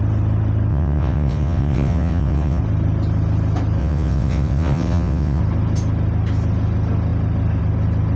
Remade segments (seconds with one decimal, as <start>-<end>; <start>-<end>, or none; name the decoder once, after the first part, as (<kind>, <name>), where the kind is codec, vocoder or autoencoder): 0.7-2.6 (vocoder, WaveNeXt); 3.8-5.4